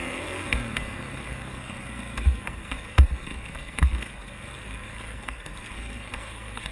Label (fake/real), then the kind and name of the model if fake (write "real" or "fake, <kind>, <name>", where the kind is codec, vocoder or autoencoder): fake, codec, SNAC